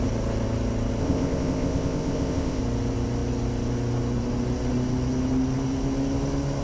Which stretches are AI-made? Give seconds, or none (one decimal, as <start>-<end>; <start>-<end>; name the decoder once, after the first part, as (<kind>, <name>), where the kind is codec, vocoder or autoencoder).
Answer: 1.0-2.6 (codec, ZipCodec)